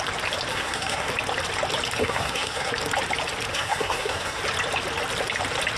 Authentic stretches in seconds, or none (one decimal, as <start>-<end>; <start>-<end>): 0.0-0.5; 1.1-2.0; 2.7-3.5; 4.4-5.8